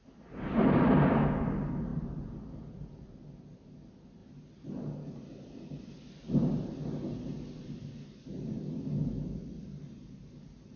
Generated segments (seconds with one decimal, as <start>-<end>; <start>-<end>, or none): none